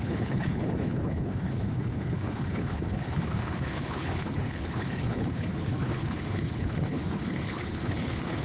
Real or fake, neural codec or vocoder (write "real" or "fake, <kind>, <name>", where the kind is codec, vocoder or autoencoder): fake, codec, HILCodec